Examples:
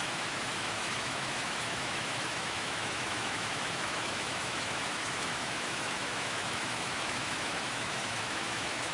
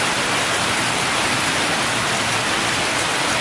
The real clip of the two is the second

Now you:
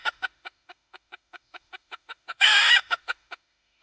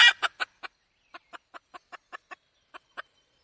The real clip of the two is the second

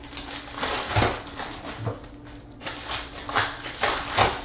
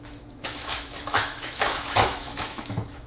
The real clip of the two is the first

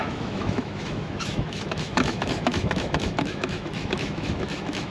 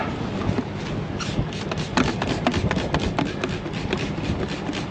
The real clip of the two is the second